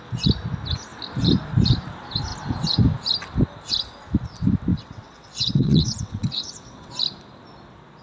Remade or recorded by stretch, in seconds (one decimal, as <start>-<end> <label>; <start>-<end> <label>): 0.0-4.7 recorded; 4.7-6.9 remade; 6.9-8.0 recorded